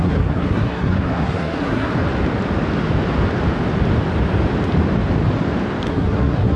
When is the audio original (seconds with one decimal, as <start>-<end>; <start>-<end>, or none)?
1.9-5.9